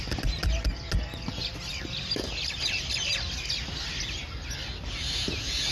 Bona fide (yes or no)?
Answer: yes